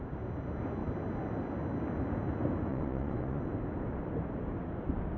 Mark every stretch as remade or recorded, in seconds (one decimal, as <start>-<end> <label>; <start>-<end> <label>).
0.0-2.7 recorded; 2.7-3.4 remade; 3.4-5.2 recorded